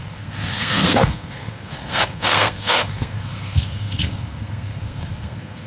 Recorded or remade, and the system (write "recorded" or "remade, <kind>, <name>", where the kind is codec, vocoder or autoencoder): remade, codec, SNAC